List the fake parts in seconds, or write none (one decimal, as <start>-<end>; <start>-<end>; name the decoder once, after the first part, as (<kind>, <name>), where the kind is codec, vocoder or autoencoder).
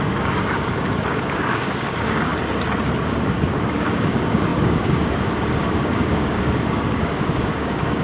0.0-2.3 (codec, DAC); 3.0-8.0